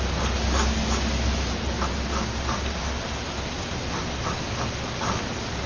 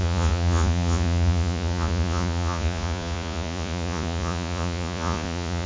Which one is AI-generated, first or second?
second